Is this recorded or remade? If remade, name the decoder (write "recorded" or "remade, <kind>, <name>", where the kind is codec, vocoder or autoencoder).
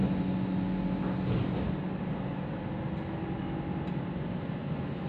recorded